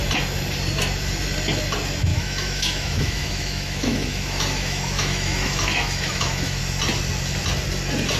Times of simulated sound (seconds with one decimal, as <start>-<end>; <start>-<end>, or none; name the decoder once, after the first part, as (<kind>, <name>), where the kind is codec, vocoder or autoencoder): 2.1-6.6 (autoencoder, DAC-VAE)